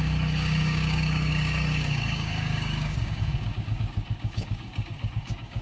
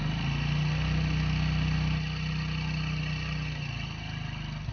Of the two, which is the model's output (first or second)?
first